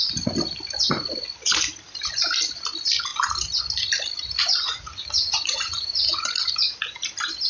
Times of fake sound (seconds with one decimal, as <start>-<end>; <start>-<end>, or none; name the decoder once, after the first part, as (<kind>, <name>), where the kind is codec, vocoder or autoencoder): 4.4-6.4 (vocoder, Vocos)